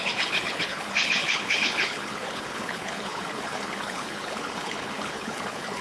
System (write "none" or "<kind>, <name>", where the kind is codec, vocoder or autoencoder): codec, HILCodec